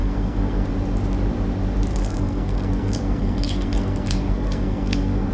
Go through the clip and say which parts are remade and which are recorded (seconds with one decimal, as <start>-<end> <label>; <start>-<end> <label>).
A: 0.0-0.7 remade; 0.7-1.9 recorded; 1.9-5.3 remade